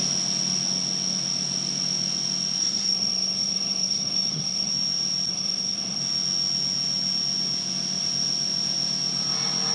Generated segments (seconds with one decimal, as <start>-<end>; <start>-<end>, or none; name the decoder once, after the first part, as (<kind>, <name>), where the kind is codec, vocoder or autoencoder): 2.6-4.7 (codec, SNAC); 5.3-6.0